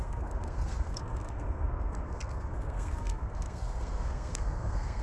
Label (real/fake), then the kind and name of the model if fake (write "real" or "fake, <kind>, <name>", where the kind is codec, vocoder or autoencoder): fake, codec, SNAC